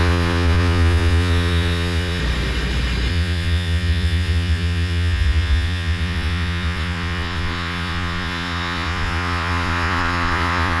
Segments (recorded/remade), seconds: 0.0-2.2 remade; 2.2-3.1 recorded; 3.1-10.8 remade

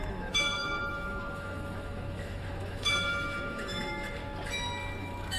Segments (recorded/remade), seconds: 0.0-4.2 remade; 4.2-5.0 recorded; 5.0-5.4 remade

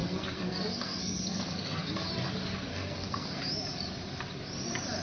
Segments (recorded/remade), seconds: 0.0-2.1 remade; 2.1-2.7 recorded; 2.7-3.4 remade; 3.4-5.0 recorded

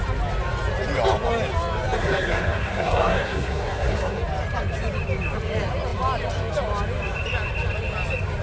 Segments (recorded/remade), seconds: 0.0-2.0 recorded; 2.0-4.2 remade; 4.2-8.4 recorded

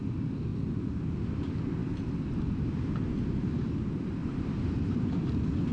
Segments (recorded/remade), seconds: 0.0-0.5 recorded; 0.5-1.1 remade; 1.1-4.2 recorded; 4.2-5.3 remade; 5.3-5.7 recorded

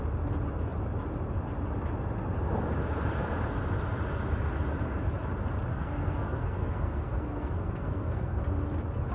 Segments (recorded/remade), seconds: 0.0-5.7 recorded; 5.7-8.4 remade; 8.4-9.1 recorded

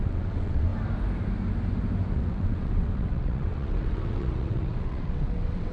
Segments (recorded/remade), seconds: 0.0-0.7 remade; 0.7-2.1 recorded; 2.1-5.7 remade